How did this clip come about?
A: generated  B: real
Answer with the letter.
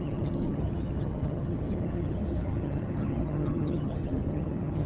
A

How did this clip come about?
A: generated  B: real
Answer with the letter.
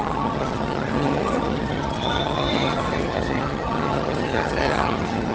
A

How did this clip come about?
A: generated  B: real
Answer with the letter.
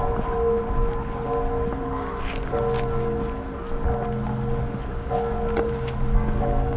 B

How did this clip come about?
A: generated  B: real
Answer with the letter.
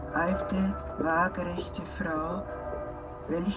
B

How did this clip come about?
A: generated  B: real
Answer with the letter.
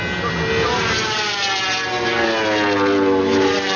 B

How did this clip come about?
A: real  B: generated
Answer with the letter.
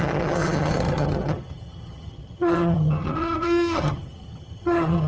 B